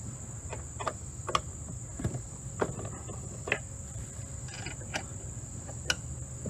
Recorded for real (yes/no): yes